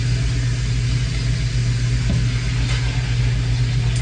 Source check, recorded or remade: recorded